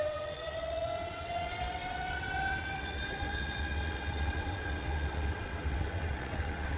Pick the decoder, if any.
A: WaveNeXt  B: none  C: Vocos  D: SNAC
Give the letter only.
A